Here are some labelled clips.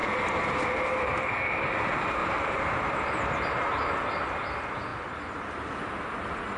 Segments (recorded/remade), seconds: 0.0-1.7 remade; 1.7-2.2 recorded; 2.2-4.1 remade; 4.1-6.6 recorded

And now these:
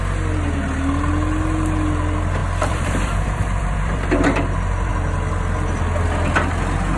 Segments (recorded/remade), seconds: 0.0-2.4 recorded; 2.4-4.9 remade; 4.9-7.0 recorded

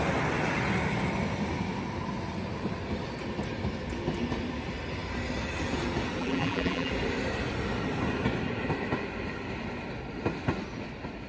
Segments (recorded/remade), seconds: 0.0-6.2 recorded; 6.2-6.9 remade; 6.9-11.3 recorded

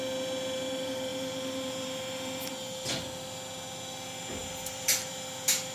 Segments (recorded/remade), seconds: 0.0-1.1 recorded; 1.1-2.5 remade; 2.5-4.4 recorded; 4.4-5.1 remade; 5.1-5.7 recorded

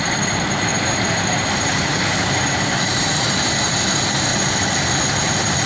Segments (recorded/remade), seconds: 0.0-0.7 recorded; 0.7-3.3 remade; 3.3-5.7 recorded